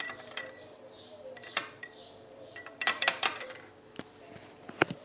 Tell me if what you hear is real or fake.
fake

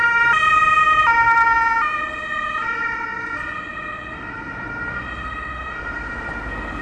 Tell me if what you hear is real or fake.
real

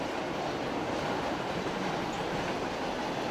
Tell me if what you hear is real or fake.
real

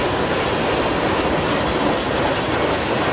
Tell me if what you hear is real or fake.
real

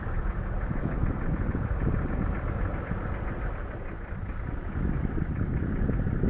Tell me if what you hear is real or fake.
fake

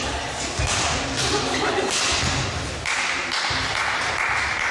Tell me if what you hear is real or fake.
real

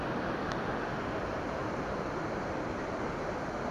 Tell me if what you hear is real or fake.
real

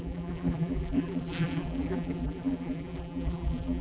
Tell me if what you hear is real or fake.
fake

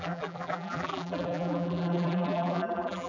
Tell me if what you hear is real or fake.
fake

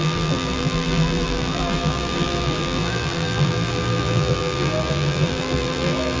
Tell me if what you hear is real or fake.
fake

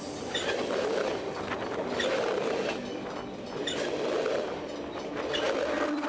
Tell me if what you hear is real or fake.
real